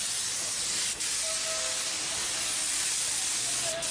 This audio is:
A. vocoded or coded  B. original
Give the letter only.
B